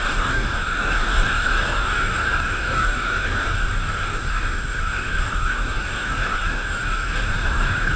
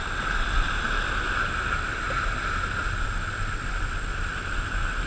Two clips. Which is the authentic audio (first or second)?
second